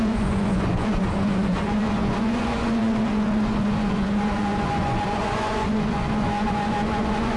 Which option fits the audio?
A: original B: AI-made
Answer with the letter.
B